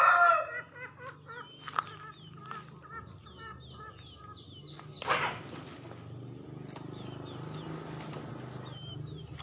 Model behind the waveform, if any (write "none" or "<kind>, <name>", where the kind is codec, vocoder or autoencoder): none